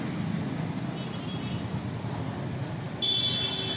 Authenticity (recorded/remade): recorded